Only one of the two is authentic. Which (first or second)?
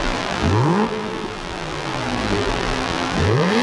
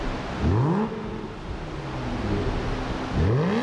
second